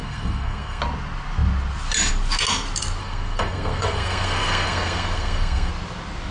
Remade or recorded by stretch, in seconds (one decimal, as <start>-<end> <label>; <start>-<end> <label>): 0.0-0.8 remade; 0.8-3.0 recorded; 3.0-5.7 remade; 5.7-6.3 recorded